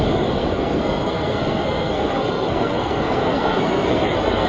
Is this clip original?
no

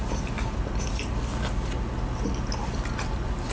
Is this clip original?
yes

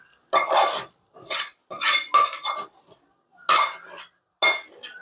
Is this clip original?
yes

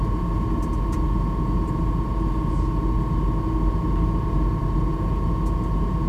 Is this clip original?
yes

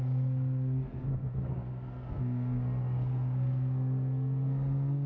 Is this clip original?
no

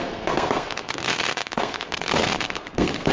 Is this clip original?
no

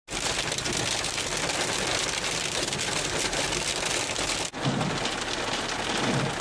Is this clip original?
yes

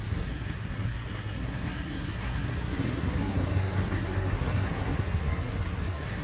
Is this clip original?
no